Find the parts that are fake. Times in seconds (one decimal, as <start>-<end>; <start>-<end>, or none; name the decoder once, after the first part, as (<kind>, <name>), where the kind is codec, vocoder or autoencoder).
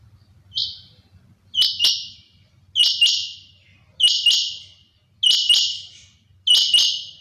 none